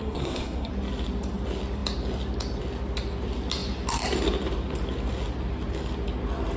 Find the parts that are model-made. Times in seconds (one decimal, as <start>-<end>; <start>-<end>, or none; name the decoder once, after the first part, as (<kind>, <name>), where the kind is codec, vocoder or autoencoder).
0.0-0.7 (codec, SNAC)

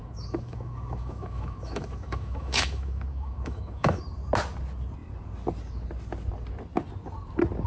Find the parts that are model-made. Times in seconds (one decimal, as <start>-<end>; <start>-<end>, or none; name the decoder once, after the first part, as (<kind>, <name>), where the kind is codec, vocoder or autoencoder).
0.0-4.0 (autoencoder, DAC-VAE)

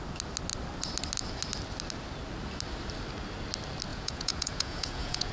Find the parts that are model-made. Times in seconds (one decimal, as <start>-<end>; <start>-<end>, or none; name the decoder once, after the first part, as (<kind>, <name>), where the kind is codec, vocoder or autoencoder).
3.9-5.3 (vocoder, Vocos)

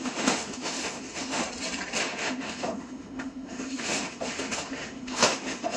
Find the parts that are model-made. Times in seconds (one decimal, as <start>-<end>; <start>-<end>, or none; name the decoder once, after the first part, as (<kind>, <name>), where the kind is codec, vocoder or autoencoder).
0.0-1.4 (autoencoder, DAC-VAE); 2.0-5.8

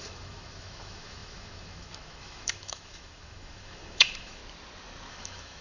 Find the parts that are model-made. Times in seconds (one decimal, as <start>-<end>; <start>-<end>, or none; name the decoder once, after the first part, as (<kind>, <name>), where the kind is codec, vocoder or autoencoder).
0.0-4.4 (autoencoder, DAC-VAE); 5.1-5.6

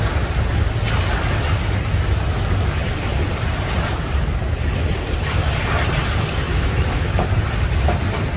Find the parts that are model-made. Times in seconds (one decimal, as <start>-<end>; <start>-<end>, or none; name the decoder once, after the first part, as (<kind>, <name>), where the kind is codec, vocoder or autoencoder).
6.5-7.1 (autoencoder, DAC-VAE)